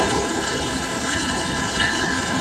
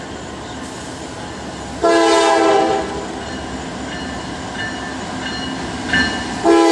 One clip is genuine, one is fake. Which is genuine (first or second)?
second